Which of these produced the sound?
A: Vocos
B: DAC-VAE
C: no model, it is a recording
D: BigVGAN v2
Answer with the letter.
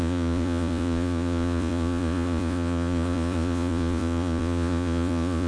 A